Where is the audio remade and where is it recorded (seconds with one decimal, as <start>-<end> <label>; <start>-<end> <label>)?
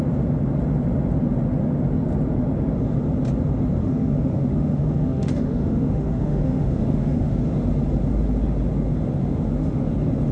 0.0-3.8 recorded; 3.8-7.5 remade; 7.5-9.2 recorded; 9.2-9.9 remade; 9.9-10.3 recorded